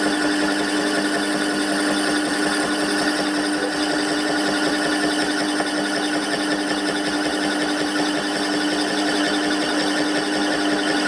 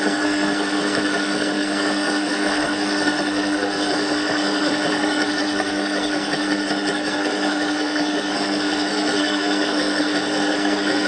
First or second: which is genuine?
first